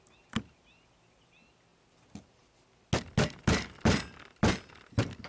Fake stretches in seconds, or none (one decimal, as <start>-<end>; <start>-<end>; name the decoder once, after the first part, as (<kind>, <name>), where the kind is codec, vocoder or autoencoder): none